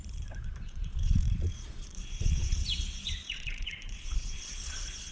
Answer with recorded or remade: remade